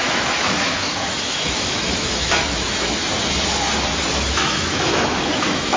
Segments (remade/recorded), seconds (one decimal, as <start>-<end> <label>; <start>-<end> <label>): 0.0-3.0 remade; 3.0-4.3 recorded; 4.3-5.8 remade